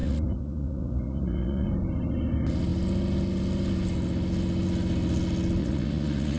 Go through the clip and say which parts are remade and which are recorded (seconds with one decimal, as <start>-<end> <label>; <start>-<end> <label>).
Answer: 0.0-1.7 remade; 1.7-5.6 recorded; 5.6-6.4 remade